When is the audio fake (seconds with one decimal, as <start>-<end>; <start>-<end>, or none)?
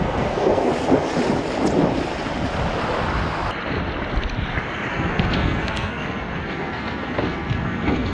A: 0.0-0.7; 4.9-8.1